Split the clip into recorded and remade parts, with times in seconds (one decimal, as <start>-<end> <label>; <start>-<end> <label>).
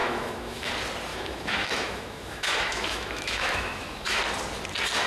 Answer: 0.0-0.7 remade; 0.7-1.1 recorded; 1.1-4.2 remade; 4.2-5.1 recorded